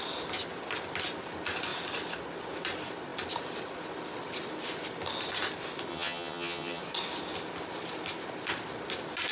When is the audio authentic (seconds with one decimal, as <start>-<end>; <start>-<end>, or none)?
0.0-5.9; 6.8-9.3